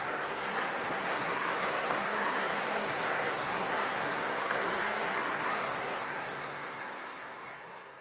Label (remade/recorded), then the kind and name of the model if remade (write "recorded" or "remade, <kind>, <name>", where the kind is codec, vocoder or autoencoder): remade, codec, SNAC